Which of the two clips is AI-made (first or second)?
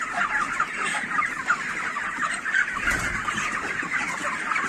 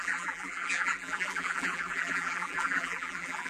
second